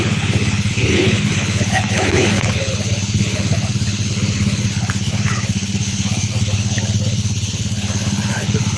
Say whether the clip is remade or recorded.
remade